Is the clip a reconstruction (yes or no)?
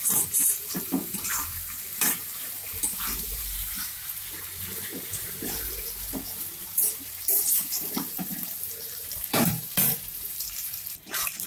yes